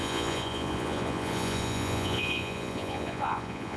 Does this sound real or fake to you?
fake